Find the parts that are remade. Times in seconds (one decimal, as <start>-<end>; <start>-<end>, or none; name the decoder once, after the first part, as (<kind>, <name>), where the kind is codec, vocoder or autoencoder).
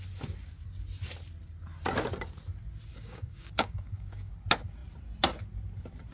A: 2.9-4.3 (codec, DAC)